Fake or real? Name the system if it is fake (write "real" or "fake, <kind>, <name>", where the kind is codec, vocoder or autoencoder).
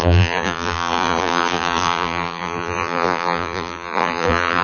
fake, vocoder, BigVGAN v2